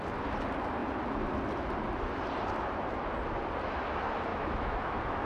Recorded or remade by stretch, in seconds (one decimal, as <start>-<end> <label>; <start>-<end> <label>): 0.0-4.3 recorded; 4.3-5.3 remade